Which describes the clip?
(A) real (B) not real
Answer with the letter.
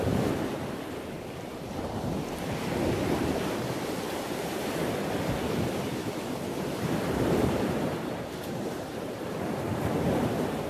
B